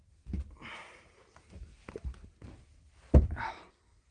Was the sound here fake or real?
real